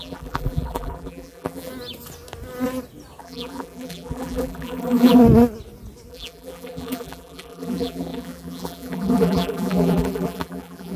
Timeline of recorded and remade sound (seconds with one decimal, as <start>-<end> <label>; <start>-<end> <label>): 0.0-1.7 remade; 1.7-3.2 recorded; 3.2-5.2 remade; 5.2-6.1 recorded; 6.1-11.0 remade